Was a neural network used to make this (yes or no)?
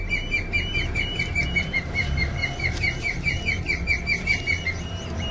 yes